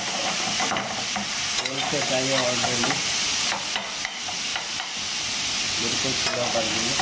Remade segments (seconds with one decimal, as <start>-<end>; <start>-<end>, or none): 2.4-3.7; 4.5-5.5